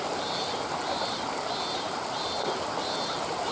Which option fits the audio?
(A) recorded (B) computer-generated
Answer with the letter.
A